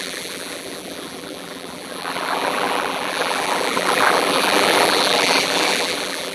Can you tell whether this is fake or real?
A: fake